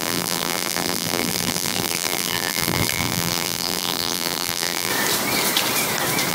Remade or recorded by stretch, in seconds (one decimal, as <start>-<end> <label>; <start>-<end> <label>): 0.0-4.9 remade; 4.9-6.3 recorded